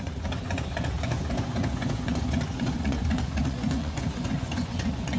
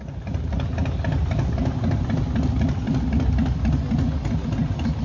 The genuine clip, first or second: second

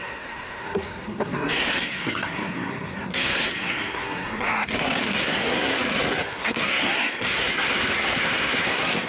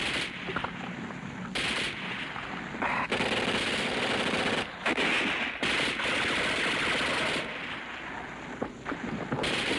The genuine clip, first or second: second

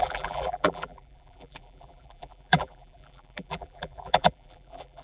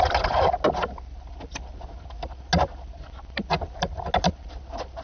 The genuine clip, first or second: second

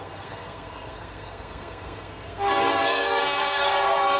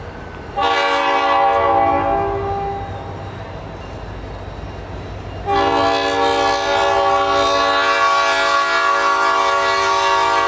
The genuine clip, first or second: second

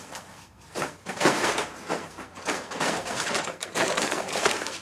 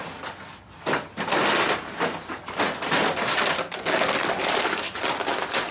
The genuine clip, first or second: second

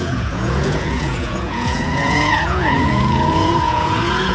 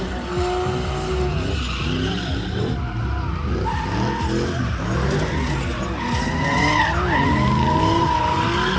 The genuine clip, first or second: second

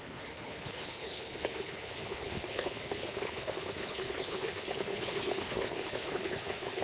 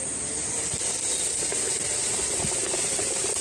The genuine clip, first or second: second